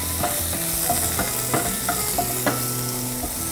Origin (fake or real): real